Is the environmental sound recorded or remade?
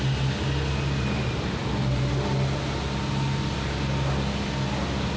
recorded